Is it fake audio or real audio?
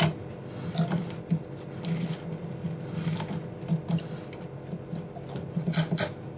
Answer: real